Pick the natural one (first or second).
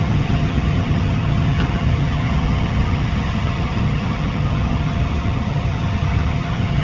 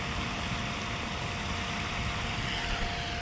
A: second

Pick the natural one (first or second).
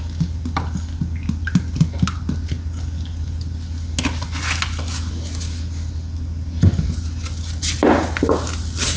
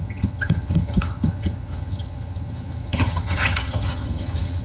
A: first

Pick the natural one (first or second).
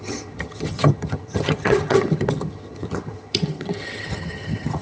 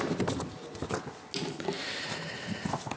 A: second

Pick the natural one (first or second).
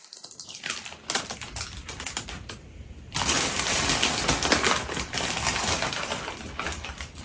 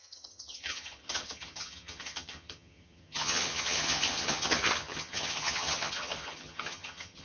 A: first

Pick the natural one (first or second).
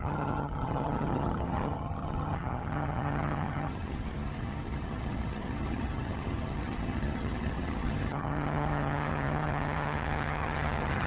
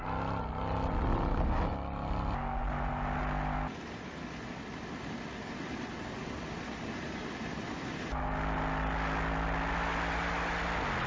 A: second